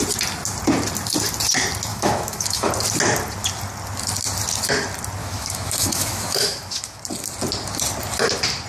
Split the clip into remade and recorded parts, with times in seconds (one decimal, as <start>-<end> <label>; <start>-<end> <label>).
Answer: 0.0-1.9 recorded; 1.9-2.7 remade; 2.7-5.2 recorded; 5.2-7.0 remade; 7.0-8.7 recorded